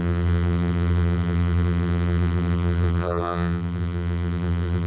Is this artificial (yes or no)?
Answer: yes